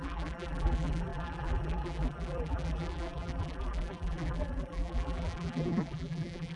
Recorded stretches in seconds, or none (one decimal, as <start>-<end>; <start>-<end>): none

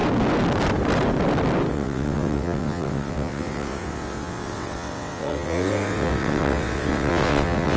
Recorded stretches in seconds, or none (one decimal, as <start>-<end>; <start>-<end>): 0.0-1.7

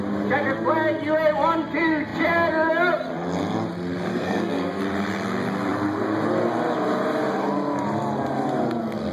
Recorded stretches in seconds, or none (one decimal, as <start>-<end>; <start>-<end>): 0.0-4.1; 4.8-9.1

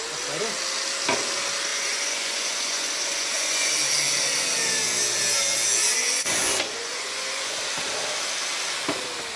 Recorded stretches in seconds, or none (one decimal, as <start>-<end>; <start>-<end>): 0.0-1.7; 3.7-6.0; 7.6-9.4

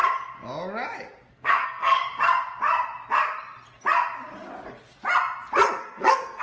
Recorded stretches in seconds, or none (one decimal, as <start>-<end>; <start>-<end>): 0.0-1.3; 2.0-5.8

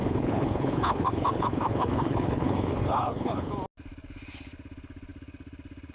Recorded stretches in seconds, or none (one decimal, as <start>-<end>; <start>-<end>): 3.5-5.9